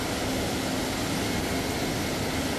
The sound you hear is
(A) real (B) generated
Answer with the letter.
A